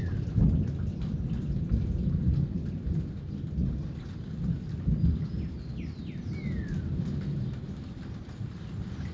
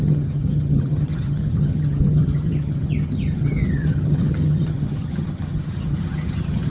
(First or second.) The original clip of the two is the first